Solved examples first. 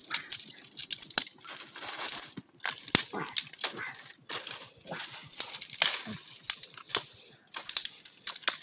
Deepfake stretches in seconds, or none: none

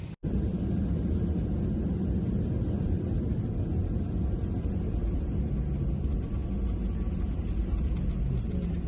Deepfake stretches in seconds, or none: 0.0-4.4 (vocoder, BigVGAN v2); 5.1-6.4; 8.4-8.9

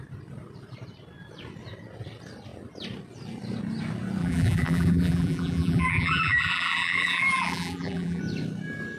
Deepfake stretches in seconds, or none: 4.2-8.2 (vocoder, BigVGAN v2)

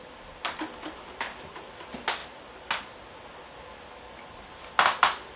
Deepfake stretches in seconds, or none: none

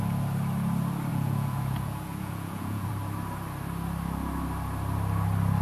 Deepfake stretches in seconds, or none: 1.1-2.9 (vocoder, Vocos)